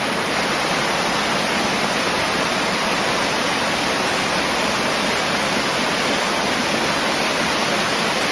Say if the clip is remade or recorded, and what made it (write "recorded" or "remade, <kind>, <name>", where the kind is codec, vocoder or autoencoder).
recorded